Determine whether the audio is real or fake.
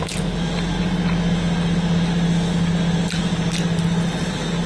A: real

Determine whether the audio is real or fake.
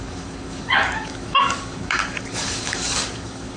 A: fake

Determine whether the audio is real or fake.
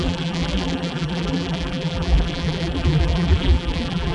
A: fake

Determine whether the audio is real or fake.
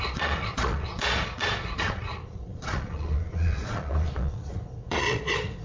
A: fake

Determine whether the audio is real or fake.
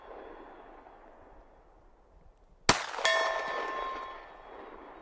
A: real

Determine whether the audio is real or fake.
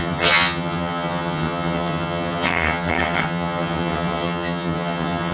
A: fake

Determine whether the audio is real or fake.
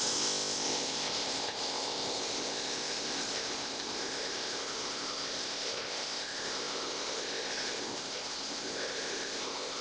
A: fake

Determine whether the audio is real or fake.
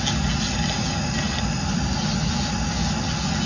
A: real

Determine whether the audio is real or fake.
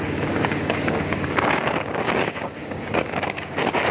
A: fake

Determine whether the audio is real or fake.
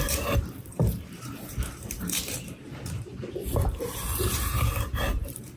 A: fake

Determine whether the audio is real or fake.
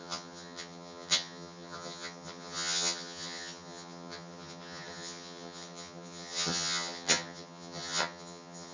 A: fake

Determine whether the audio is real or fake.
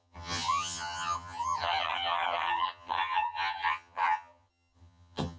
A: fake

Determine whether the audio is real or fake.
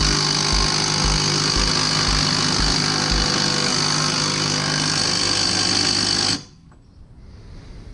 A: real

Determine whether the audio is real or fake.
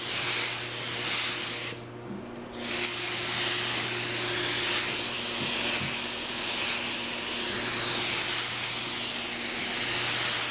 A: real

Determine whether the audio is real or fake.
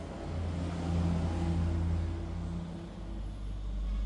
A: real